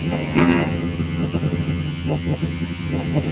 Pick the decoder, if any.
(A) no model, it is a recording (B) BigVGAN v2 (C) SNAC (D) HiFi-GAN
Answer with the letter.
D